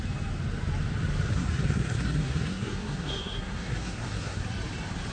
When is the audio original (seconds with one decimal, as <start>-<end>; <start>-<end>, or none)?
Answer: 0.0-1.3; 4.4-5.1